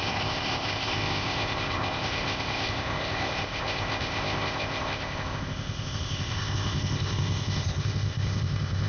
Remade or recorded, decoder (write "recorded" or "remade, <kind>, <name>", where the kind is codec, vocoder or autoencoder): remade, codec, ZipCodec